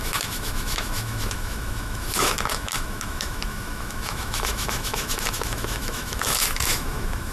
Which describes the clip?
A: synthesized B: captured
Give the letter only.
A